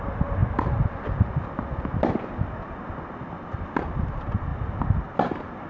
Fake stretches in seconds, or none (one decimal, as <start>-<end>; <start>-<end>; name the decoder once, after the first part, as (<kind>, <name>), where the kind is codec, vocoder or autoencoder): 0.0-0.4 (vocoder, BigVGAN v2); 3.8-4.5; 5.0-5.7

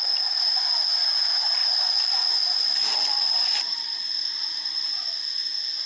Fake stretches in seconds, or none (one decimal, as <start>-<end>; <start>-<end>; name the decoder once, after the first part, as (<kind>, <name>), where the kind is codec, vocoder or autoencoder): 0.0-0.5 (vocoder, BigVGAN v2); 1.6-4.9

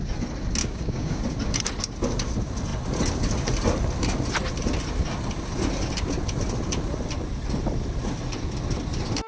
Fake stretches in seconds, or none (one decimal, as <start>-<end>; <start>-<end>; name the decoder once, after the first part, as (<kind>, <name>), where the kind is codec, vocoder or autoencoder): 0.6-1.2 (codec, DAC)

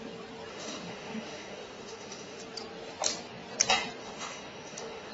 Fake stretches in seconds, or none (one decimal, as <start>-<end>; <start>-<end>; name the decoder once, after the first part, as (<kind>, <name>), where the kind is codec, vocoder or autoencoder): 0.5-2.4 (autoencoder, DAC-VAE); 4.0-5.1

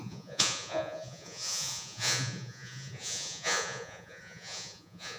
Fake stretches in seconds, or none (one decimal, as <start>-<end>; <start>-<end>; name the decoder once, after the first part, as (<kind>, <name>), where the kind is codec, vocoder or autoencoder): 0.0-5.2 (vocoder, Vocos)